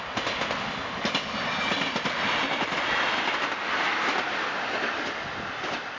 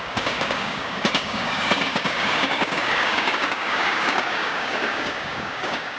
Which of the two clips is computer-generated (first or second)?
second